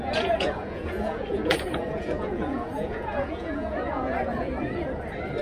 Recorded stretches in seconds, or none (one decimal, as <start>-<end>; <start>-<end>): 4.5-5.4